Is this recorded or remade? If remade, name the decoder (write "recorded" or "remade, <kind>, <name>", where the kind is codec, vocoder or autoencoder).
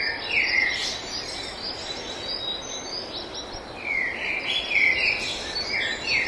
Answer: recorded